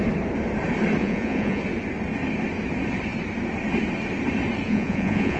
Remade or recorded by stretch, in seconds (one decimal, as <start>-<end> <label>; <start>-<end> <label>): 0.0-1.0 recorded; 1.0-1.6 remade; 1.6-4.6 recorded; 4.6-5.4 remade